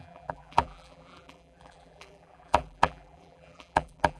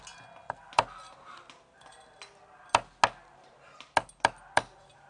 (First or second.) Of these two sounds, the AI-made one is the first